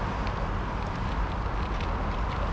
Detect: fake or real real